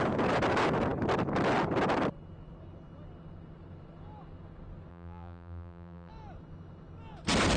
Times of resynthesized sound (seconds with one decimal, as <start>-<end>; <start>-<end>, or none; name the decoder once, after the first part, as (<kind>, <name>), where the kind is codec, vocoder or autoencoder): 4.9-6.1 (vocoder, BigVGAN v2)